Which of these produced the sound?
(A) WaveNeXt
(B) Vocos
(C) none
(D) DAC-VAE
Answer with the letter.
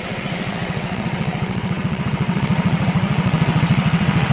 A